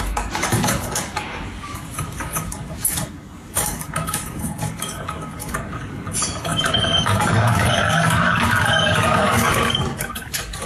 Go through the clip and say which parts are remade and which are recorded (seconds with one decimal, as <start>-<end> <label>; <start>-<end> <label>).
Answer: 0.0-10.7 remade